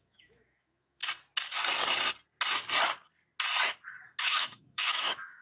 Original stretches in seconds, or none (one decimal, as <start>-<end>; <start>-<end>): 1.0-4.2